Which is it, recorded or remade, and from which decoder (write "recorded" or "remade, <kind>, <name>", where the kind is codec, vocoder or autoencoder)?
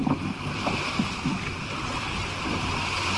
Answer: recorded